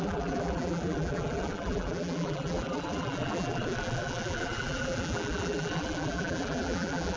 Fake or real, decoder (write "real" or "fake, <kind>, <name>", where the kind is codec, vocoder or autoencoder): fake, vocoder, BigVGAN v2